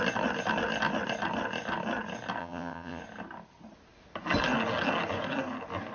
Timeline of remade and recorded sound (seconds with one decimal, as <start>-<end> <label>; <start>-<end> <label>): 0.0-2.4 recorded; 2.4-3.0 remade; 3.0-5.9 recorded